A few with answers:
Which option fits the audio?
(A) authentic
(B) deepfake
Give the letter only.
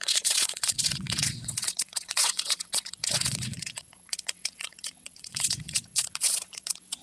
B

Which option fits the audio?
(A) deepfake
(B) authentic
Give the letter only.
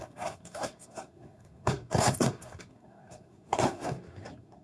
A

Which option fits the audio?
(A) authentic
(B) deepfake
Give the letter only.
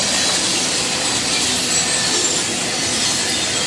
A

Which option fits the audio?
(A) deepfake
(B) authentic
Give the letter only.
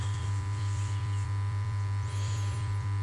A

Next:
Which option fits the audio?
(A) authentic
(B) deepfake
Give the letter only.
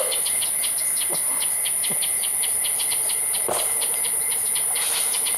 A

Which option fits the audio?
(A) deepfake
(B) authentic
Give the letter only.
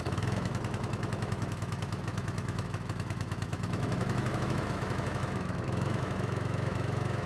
A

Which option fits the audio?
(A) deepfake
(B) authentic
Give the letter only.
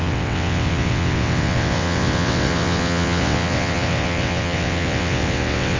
A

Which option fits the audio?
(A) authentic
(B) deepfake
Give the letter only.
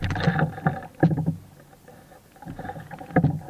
A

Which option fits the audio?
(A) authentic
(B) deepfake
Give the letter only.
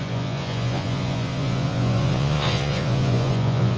B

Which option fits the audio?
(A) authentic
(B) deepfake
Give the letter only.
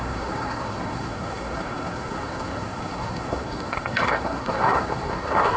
B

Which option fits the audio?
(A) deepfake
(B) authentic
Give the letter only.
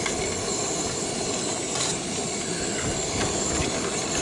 B